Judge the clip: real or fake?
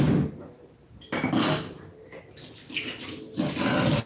real